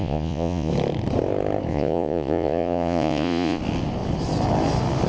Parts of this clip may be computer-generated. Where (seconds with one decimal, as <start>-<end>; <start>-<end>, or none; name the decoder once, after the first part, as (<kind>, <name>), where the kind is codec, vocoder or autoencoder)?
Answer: 0.0-0.7 (vocoder, Vocos); 1.7-3.6